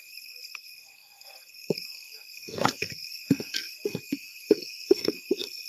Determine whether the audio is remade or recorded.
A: remade